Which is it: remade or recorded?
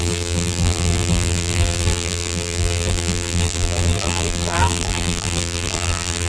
remade